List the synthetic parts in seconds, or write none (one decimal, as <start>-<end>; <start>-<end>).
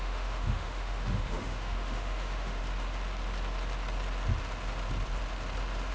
0.0-2.6